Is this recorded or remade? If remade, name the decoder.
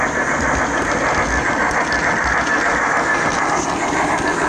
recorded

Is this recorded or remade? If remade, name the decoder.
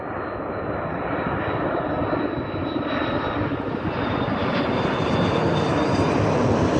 remade, vocoder, BigVGAN v2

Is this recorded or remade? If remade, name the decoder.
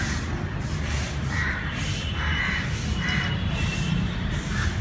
remade, vocoder, BigVGAN v2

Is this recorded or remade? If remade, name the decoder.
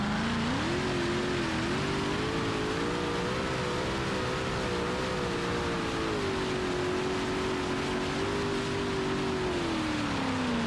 recorded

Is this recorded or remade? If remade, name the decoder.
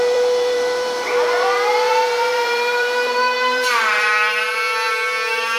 remade, vocoder, BigVGAN v2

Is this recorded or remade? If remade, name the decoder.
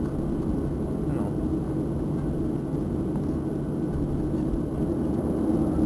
recorded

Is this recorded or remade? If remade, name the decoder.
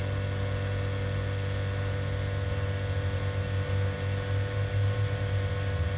recorded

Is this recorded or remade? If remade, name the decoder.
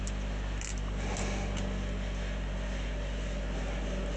recorded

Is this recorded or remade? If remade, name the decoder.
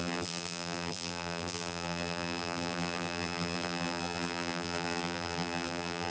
remade, vocoder, BigVGAN v2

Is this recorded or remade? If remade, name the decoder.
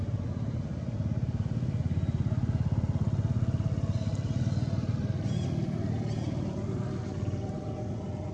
recorded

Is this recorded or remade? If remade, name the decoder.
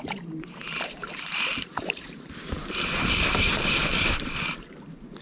remade, vocoder, BigVGAN v2